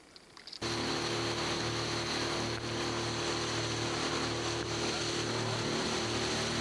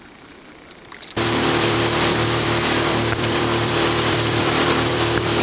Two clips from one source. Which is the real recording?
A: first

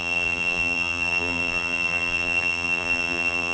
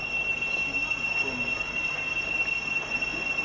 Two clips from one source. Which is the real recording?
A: second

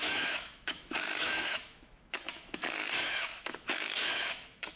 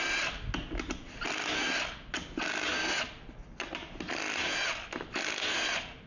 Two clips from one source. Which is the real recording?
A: second